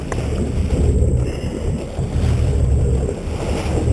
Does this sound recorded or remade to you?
recorded